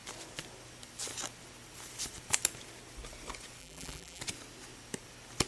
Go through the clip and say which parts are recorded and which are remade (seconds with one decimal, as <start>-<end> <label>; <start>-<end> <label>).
0.0-3.6 recorded; 3.6-4.2 remade; 4.2-5.5 recorded